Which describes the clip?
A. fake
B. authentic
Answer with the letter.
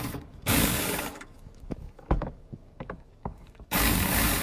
A